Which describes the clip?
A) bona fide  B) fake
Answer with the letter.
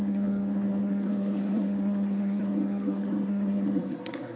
B